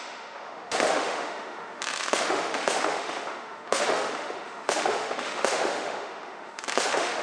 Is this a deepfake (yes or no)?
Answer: yes